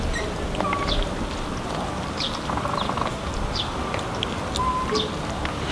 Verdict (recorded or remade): recorded